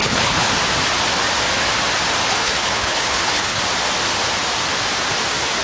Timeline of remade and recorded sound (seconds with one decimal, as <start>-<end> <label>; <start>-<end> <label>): 0.0-0.5 remade; 0.5-2.3 recorded; 2.3-3.6 remade; 3.6-5.6 recorded